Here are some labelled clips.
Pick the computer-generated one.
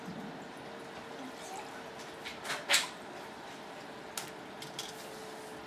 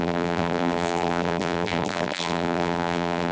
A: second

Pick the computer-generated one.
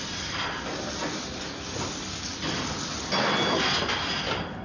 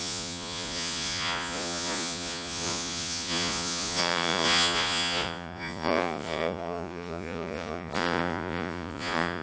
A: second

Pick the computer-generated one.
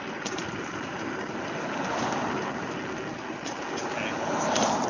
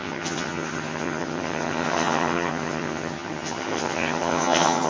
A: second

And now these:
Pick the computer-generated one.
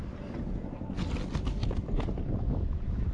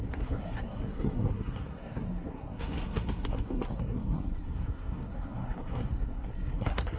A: second